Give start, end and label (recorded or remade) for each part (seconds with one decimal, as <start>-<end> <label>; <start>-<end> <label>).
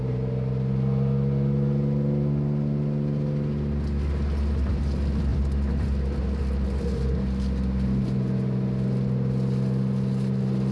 0.0-10.7 recorded